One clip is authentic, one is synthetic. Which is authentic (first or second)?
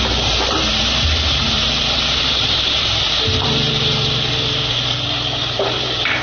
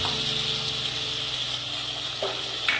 second